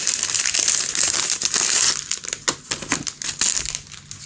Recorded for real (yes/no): yes